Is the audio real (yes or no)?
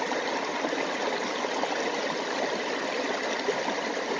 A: yes